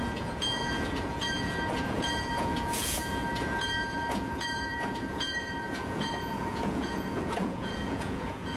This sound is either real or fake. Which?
fake